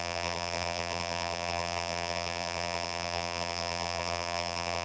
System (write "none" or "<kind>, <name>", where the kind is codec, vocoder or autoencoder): vocoder, BigVGAN v2